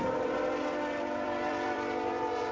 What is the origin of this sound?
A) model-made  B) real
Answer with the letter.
A